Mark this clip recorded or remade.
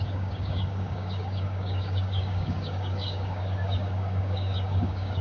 remade